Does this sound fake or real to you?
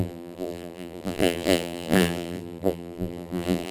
fake